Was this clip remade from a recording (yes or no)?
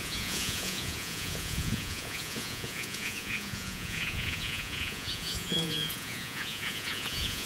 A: yes